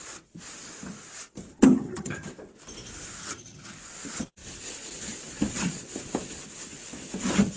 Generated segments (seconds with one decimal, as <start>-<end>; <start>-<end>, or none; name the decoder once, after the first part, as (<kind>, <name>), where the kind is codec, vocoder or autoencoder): 1.6-2.3 (vocoder, HiFi-GAN); 3.2-3.8